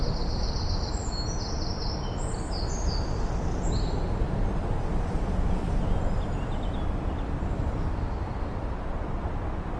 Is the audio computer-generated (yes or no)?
no